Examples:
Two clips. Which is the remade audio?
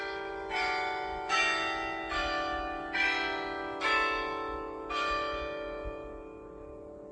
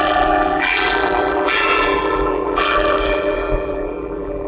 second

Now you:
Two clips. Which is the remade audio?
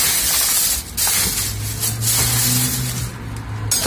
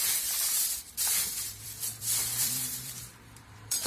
second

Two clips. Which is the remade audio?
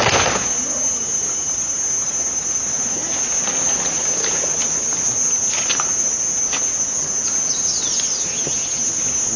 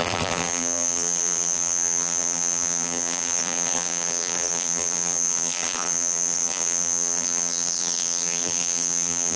second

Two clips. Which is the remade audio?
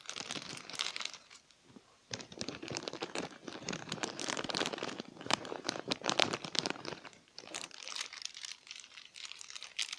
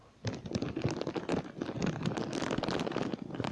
first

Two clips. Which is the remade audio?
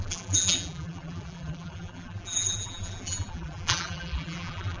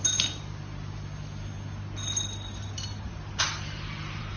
first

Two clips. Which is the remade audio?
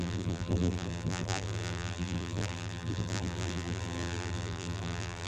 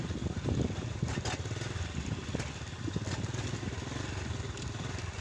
first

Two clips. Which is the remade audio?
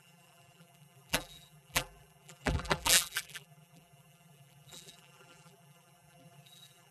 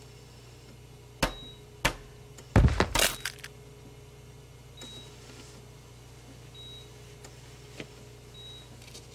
first